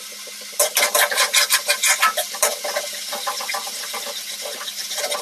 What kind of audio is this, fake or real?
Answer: real